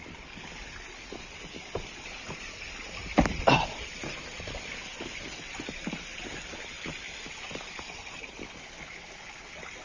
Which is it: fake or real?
real